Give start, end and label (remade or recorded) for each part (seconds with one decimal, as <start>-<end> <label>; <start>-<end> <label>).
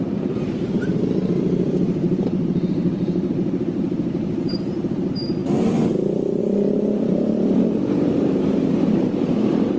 0.0-0.8 remade; 0.8-1.8 recorded; 1.8-5.4 remade; 5.4-6.4 recorded; 6.4-9.8 remade